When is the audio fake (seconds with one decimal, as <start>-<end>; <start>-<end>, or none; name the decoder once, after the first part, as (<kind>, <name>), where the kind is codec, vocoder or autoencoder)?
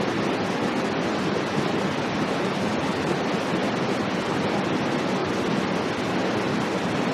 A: 3.6-4.4 (vocoder, BigVGAN v2)